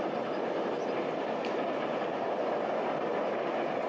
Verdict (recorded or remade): recorded